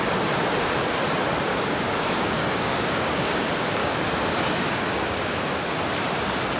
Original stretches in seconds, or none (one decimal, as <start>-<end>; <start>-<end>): 0.0-1.5; 3.4-3.8; 5.4-6.6